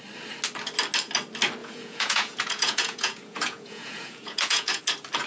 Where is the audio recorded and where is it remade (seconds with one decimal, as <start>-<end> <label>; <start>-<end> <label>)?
0.0-1.6 recorded; 1.6-4.8 remade; 4.8-5.3 recorded